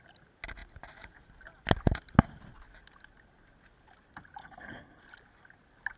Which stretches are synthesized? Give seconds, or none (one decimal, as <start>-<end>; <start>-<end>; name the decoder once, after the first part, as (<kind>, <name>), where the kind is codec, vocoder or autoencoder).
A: 4.4-5.0 (codec, HILCodec)